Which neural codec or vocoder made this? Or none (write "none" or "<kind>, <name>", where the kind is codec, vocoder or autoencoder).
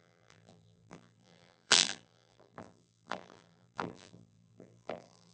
vocoder, BigVGAN v2